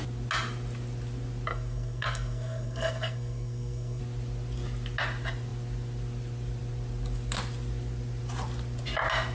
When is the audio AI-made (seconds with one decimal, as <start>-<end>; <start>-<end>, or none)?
1.5-4.0